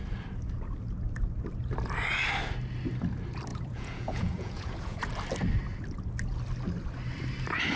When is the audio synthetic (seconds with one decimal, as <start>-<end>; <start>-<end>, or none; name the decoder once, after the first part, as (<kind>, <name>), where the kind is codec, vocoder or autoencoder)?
3.5-5.1 (vocoder, Vocos)